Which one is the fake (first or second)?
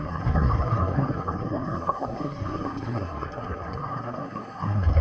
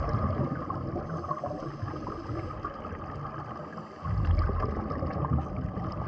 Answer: first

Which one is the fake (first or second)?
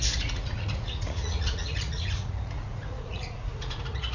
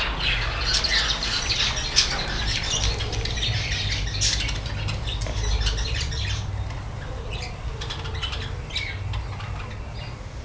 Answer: first